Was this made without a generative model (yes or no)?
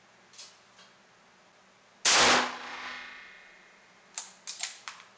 yes